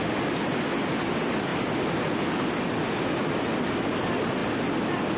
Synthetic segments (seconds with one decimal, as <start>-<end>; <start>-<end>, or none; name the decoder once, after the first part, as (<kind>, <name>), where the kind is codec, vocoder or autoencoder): none